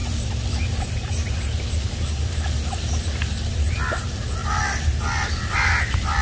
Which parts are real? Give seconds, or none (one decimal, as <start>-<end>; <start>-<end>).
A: 0.0-6.2